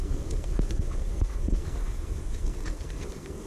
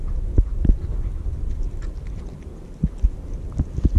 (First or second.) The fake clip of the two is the first